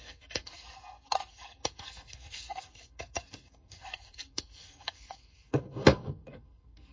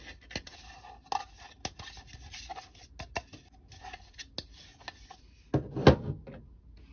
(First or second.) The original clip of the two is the second